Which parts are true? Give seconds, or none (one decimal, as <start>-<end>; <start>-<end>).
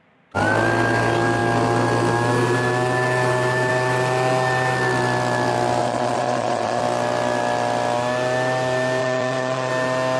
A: 0.0-5.8; 6.8-9.0; 9.7-10.2